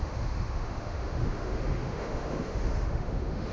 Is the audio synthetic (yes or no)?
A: yes